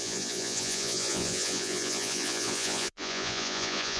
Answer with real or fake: fake